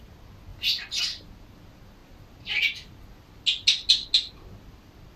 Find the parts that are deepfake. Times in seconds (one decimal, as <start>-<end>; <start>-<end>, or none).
none